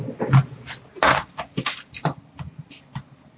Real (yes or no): yes